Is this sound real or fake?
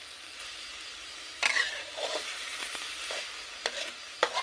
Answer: real